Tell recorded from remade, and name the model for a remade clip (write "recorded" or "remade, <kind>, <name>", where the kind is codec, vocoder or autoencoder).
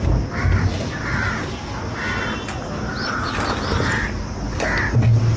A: recorded